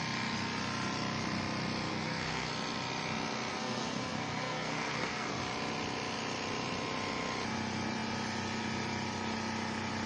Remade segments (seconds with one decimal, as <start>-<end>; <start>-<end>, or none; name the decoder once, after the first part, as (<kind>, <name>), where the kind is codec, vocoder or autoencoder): 1.9-2.5 (codec, SNAC); 3.5-5.4